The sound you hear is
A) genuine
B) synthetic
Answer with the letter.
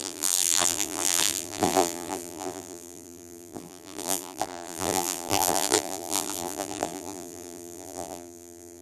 B